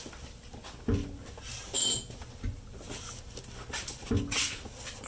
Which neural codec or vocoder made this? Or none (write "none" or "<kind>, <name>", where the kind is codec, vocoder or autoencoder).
none